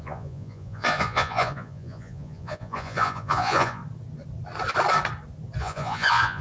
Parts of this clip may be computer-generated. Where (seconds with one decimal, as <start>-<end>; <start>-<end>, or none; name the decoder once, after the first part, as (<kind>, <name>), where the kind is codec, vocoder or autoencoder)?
0.0-3.8 (vocoder, Vocos); 5.6-6.4